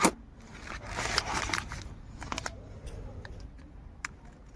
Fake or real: real